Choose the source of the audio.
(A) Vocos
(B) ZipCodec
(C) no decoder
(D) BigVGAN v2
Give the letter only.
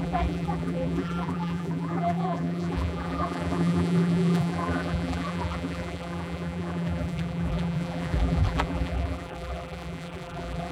D